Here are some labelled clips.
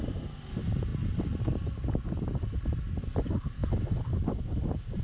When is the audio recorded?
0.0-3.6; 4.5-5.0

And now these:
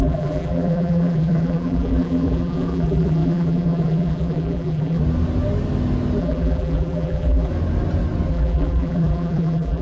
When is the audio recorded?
5.0-6.2; 7.5-8.3

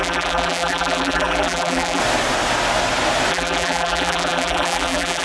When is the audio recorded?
2.0-3.3